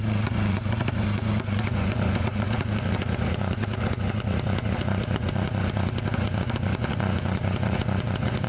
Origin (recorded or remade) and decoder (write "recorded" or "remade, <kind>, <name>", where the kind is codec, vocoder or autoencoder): remade, vocoder, Vocos